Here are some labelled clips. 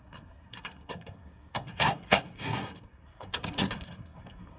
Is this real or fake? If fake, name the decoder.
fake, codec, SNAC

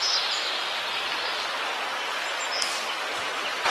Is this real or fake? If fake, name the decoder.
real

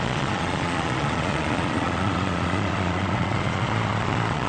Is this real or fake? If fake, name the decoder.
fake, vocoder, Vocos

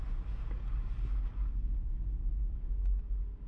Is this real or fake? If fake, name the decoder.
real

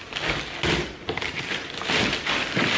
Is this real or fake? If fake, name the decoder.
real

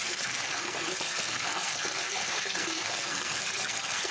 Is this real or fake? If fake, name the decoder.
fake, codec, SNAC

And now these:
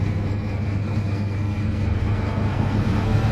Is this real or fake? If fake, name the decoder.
fake, codec, SNAC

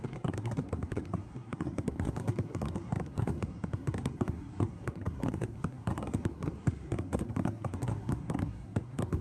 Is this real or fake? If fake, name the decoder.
fake, codec, SNAC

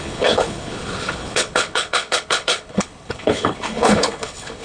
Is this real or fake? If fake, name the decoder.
fake, codec, HILCodec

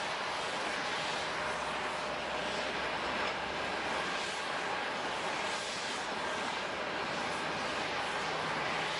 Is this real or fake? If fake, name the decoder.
real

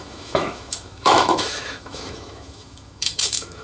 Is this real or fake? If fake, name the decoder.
fake, autoencoder, DAC-VAE